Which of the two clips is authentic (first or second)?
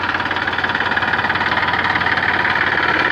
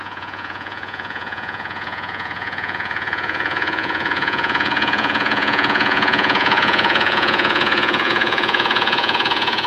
first